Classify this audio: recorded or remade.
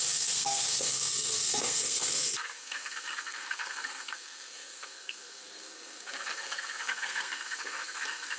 remade